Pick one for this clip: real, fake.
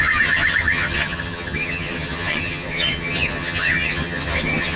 fake